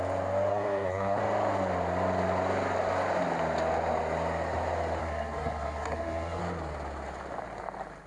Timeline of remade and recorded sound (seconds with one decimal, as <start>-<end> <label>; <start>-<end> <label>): 0.0-0.5 recorded; 0.5-1.2 remade; 1.2-5.0 recorded; 5.0-6.4 remade; 6.4-8.1 recorded